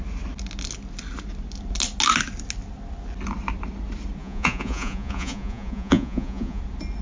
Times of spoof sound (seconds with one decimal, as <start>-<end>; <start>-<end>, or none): 4.2-6.6